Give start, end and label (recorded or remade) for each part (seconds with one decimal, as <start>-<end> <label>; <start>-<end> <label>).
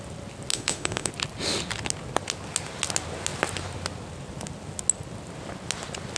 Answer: 0.0-0.5 recorded; 0.5-1.1 remade; 1.1-6.2 recorded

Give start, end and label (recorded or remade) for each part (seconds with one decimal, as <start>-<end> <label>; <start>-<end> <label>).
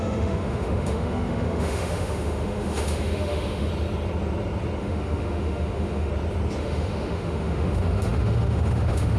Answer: 0.0-3.7 remade; 3.7-4.8 recorded; 4.8-6.1 remade; 6.1-6.6 recorded; 6.6-9.2 remade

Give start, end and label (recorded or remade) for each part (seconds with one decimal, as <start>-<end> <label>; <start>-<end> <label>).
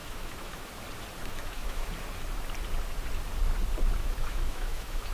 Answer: 0.0-0.7 remade; 0.7-1.2 recorded; 1.2-1.9 remade; 1.9-4.0 recorded; 4.0-5.1 remade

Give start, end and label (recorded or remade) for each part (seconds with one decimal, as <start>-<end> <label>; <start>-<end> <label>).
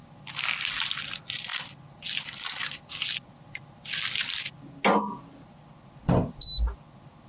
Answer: 0.0-7.3 recorded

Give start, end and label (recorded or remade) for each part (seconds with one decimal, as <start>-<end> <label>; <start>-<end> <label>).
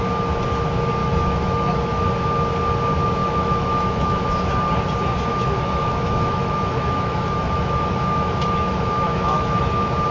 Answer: 0.0-1.0 recorded; 1.0-2.1 remade; 2.1-3.2 recorded; 3.2-4.3 remade; 4.3-5.3 recorded; 5.3-9.6 remade; 9.6-10.1 recorded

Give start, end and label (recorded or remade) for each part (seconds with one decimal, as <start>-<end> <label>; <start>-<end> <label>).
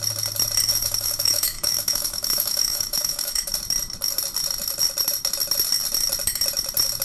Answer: 0.0-0.8 recorded; 0.8-3.5 remade; 3.5-7.0 recorded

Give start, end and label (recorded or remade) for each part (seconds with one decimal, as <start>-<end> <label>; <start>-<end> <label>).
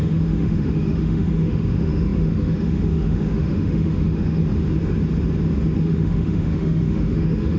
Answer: 0.0-4.4 remade; 4.4-5.8 recorded; 5.8-7.6 remade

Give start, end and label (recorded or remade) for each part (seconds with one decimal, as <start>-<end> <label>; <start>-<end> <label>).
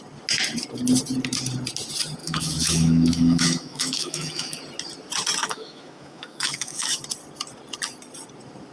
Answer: 0.0-2.2 recorded; 2.2-4.6 remade; 4.6-5.4 recorded; 5.4-7.0 remade; 7.0-8.7 recorded